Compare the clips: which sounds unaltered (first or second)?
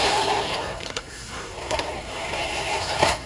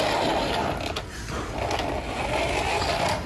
second